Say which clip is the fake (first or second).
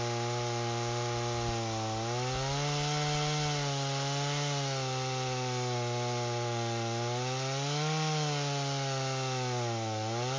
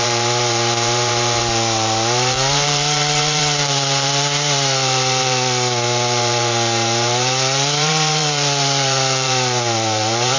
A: second